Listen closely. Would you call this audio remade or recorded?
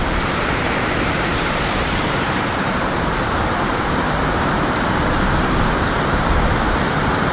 remade